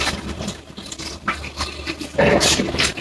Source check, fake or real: real